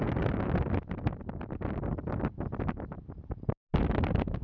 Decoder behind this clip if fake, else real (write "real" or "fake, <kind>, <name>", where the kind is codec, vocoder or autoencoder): real